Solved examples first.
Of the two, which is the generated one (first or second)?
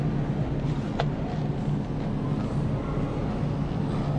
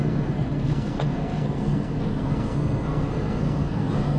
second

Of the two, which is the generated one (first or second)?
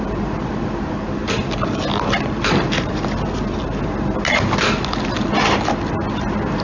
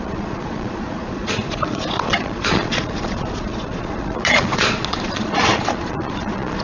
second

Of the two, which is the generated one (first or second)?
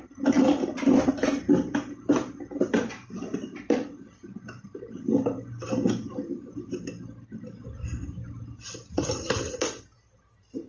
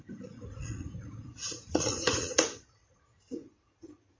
second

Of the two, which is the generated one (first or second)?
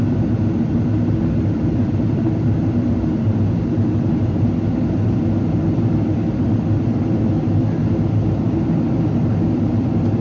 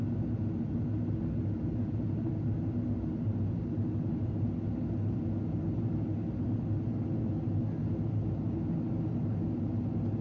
first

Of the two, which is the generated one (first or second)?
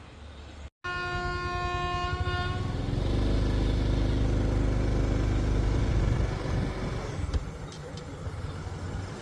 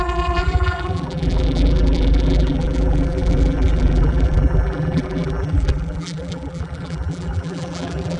second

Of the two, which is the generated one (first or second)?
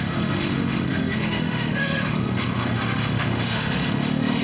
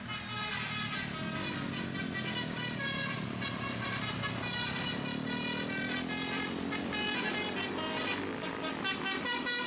first